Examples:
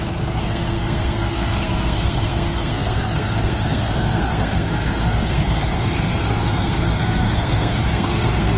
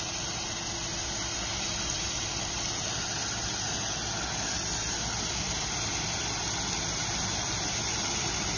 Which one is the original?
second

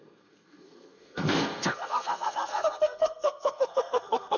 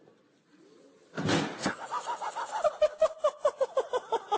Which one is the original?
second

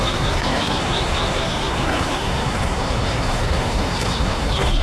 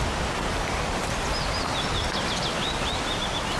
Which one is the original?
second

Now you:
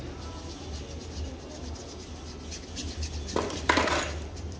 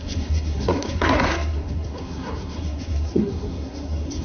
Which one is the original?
first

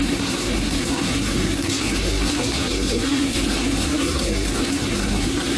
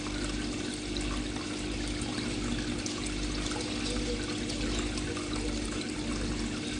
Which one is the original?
second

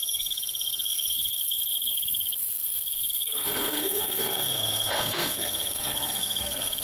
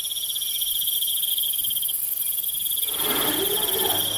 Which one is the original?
second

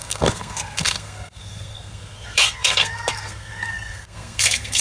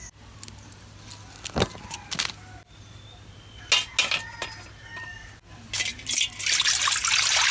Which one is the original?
second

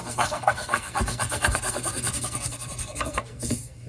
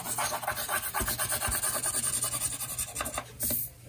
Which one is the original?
second